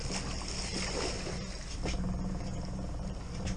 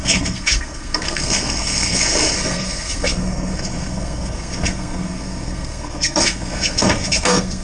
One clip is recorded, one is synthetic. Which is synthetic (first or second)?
second